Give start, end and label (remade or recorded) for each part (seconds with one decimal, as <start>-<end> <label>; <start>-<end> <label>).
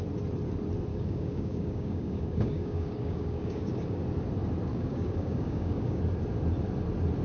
0.0-0.9 recorded; 0.9-4.0 remade; 4.0-4.7 recorded; 4.7-6.0 remade; 6.0-7.2 recorded